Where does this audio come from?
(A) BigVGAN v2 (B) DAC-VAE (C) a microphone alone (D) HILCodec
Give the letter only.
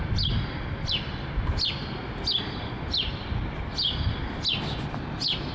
C